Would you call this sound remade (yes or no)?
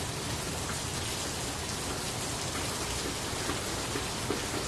no